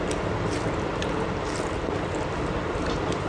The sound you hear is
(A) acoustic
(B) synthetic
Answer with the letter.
A